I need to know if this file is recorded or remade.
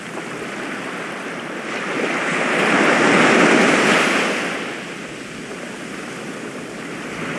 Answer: recorded